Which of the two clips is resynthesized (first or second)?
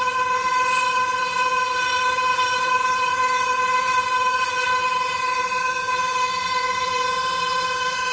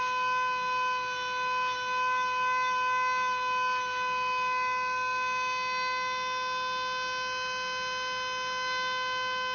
first